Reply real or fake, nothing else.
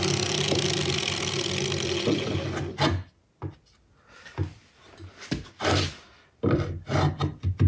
real